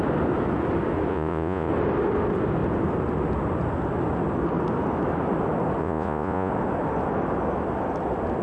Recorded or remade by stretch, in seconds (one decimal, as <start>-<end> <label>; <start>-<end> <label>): 0.0-1.1 recorded; 1.1-1.7 remade; 1.7-5.8 recorded; 5.8-6.5 remade; 6.5-8.4 recorded